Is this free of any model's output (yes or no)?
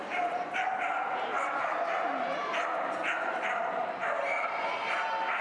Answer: yes